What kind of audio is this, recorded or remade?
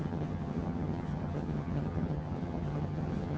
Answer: remade